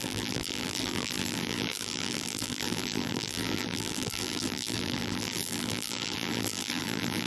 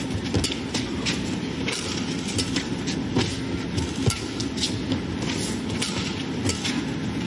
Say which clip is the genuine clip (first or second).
second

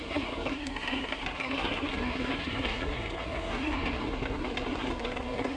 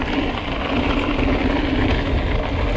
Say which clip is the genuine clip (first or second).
second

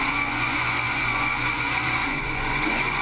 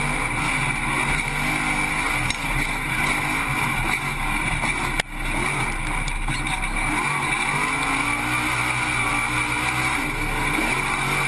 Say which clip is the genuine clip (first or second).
second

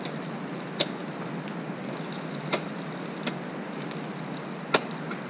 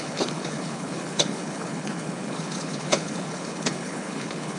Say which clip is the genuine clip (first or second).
first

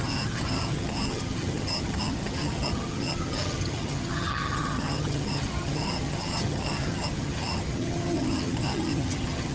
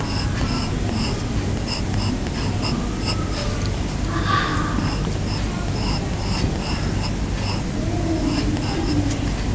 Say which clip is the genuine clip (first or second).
second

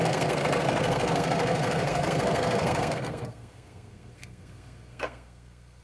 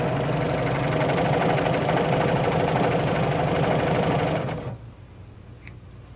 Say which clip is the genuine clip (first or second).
second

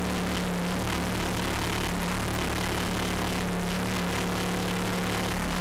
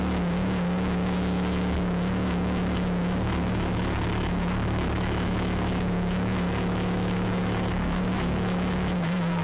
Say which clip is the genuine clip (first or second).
first